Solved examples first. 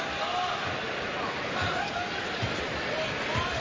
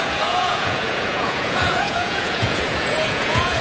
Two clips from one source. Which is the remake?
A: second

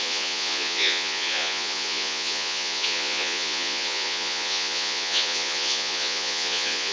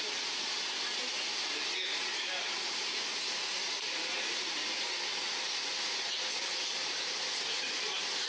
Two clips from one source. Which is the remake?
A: first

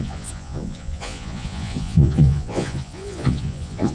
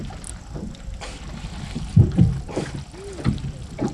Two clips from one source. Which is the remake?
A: first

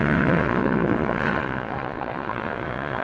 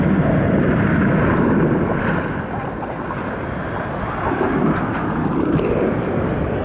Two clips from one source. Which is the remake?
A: first